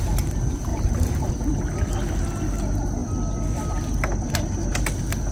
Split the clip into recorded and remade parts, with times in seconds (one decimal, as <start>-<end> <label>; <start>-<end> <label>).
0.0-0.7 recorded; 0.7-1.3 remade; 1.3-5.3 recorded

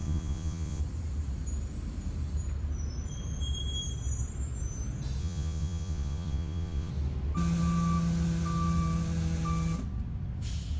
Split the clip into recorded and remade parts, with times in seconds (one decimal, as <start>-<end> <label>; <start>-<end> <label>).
0.0-0.8 remade; 0.8-5.2 recorded; 5.2-6.9 remade; 6.9-10.8 recorded

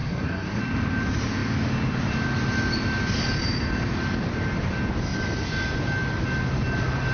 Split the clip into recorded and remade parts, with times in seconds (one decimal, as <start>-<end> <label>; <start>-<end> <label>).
0.0-0.6 remade; 0.6-7.1 recorded

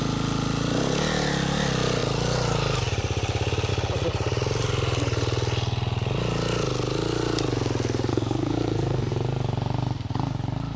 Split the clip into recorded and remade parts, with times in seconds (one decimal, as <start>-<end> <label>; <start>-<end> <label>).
0.0-8.1 recorded; 8.1-9.1 remade; 9.1-10.8 recorded